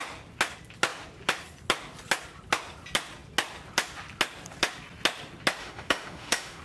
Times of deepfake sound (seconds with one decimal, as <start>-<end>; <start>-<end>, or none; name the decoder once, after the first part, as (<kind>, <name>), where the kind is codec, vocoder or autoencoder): 5.6-6.6 (autoencoder, DAC-VAE)